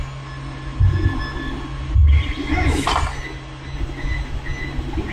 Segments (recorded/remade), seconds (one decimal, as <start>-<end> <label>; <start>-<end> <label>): 0.0-2.4 recorded; 2.4-2.9 remade; 2.9-5.1 recorded